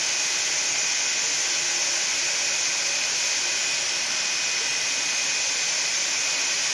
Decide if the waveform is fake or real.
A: real